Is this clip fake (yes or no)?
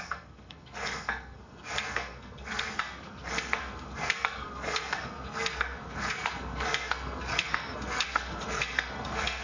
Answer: yes